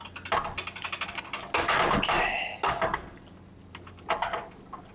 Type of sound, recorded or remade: recorded